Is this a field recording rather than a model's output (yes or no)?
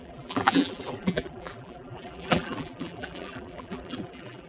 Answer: no